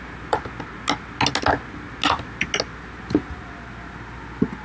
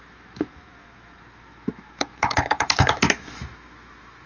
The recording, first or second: first